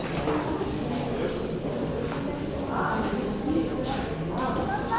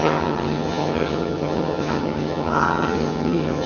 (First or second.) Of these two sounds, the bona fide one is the first